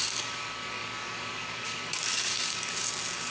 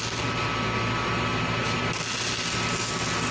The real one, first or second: second